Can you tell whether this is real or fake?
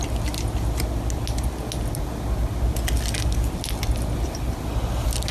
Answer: real